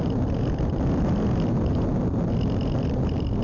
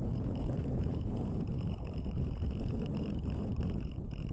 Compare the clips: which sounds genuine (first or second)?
first